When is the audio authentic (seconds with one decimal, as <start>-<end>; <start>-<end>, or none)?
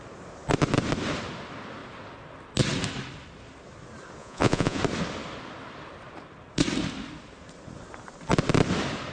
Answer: 0.0-4.2; 4.8-9.1